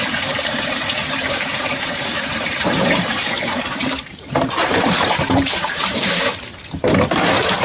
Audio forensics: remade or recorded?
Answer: remade